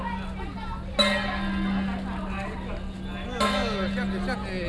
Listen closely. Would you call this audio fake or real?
real